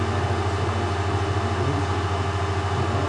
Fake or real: real